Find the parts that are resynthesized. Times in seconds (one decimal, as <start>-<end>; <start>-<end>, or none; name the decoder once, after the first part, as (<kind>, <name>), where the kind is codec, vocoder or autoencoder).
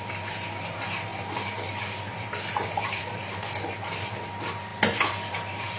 none